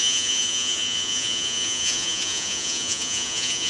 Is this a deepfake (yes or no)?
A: yes